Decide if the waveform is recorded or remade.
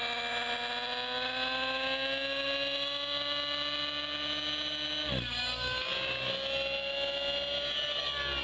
recorded